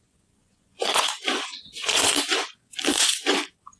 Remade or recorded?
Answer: remade